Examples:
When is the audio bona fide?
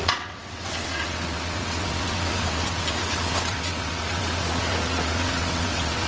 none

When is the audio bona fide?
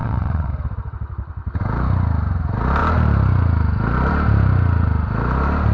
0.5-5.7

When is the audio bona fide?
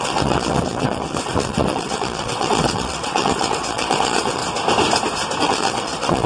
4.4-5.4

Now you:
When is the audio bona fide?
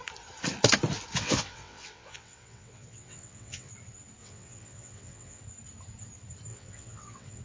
0.0-1.1; 3.7-4.2; 5.4-6.5